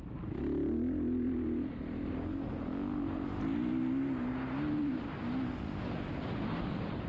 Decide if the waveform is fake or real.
real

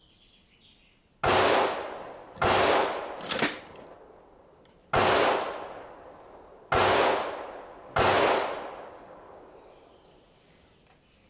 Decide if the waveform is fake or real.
real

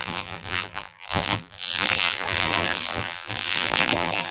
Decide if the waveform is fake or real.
fake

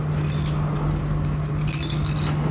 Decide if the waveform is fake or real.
real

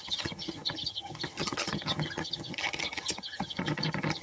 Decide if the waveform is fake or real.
fake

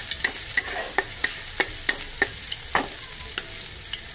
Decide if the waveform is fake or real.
real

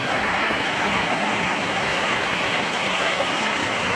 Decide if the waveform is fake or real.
fake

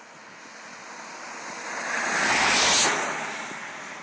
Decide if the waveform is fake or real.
real